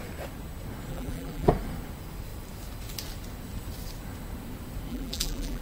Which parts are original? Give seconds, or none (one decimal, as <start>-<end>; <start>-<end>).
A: 0.0-0.9; 1.5-4.9